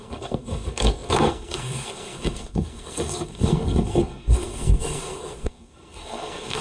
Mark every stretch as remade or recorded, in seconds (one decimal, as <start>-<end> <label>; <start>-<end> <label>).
0.0-6.6 remade